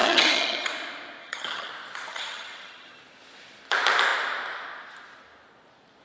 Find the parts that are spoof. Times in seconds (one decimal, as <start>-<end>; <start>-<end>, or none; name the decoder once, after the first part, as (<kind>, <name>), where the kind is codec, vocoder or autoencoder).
0.0-0.7 (vocoder, HiFi-GAN); 1.2-1.7; 2.1-3.0